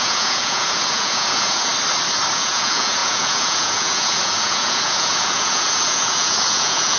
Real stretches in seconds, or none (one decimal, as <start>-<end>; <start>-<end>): 1.7-2.3